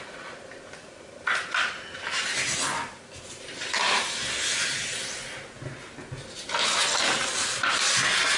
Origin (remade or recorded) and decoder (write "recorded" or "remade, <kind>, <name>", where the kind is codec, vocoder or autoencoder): recorded